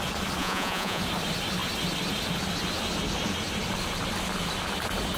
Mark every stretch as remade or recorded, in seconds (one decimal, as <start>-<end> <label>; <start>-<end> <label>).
0.0-0.4 recorded; 0.4-1.0 remade; 1.0-5.2 recorded